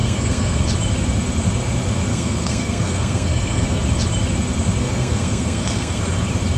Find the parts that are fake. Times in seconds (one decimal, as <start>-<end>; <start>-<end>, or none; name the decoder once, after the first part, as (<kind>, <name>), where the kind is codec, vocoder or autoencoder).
0.0-0.6 (codec, SNAC); 2.1-3.8; 4.8-6.0